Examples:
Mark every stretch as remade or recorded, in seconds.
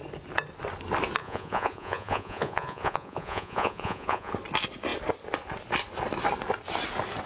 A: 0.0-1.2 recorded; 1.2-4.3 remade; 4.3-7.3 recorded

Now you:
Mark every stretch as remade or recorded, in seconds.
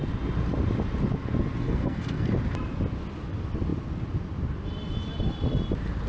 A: 0.0-1.6 recorded; 1.6-2.3 remade; 2.3-6.1 recorded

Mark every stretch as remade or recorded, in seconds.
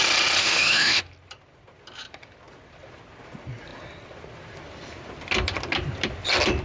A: 0.0-0.4 recorded; 0.4-1.0 remade; 1.0-6.6 recorded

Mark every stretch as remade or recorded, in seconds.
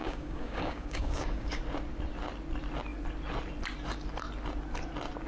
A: 0.0-1.6 remade; 1.6-5.3 recorded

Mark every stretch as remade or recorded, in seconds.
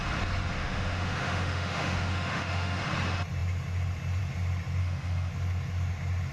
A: 0.0-0.6 recorded; 0.6-2.8 remade; 2.8-4.8 recorded; 4.8-5.3 remade; 5.3-6.3 recorded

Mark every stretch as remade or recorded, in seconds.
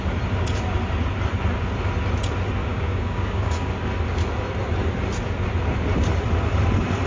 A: 0.0-2.6 recorded; 2.6-3.7 remade; 3.7-7.1 recorded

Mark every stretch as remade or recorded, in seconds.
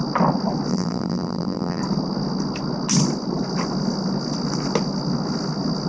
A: 0.0-0.7 recorded; 0.7-1.8 remade; 1.8-5.9 recorded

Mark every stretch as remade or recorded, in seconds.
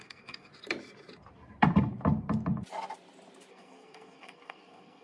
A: 0.0-0.5 remade; 0.5-3.5 recorded; 3.5-5.0 remade